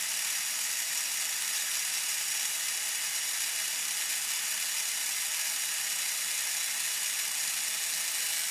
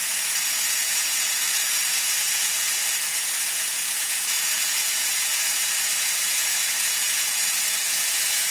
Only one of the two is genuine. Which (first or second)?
first